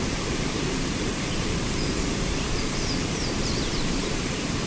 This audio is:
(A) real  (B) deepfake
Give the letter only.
B